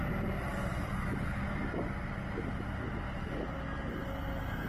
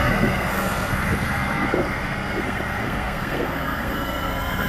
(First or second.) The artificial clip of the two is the second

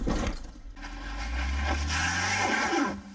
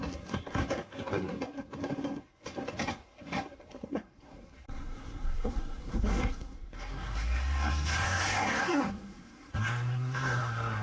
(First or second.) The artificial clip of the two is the second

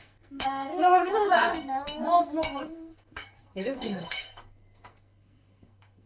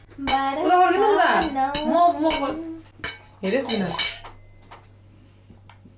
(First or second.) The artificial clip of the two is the first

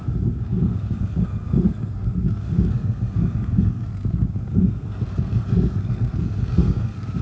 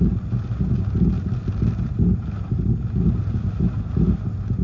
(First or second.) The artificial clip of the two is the first